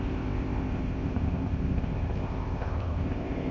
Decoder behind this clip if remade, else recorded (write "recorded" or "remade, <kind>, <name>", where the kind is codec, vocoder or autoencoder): remade, codec, ZipCodec